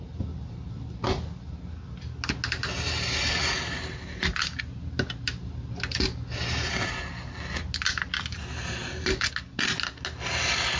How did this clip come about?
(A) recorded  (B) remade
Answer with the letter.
A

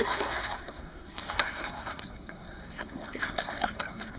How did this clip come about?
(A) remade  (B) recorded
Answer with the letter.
A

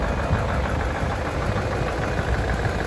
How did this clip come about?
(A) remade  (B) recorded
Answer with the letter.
B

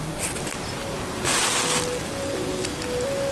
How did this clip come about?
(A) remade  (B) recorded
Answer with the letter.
B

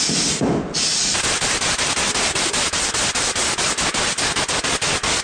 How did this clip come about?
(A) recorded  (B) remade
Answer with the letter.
A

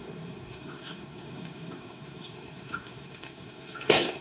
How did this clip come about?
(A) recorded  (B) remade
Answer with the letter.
B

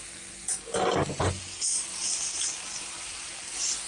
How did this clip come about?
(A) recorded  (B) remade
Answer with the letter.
A